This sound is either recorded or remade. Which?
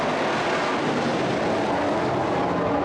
recorded